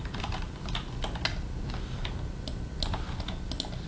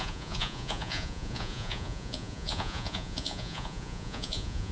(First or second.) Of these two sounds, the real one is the first